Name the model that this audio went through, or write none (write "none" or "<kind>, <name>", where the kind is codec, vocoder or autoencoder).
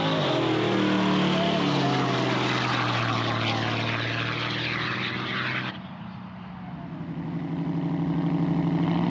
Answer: none